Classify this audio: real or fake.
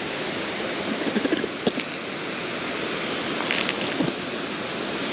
real